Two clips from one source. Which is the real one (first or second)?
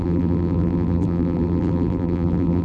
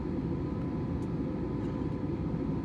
second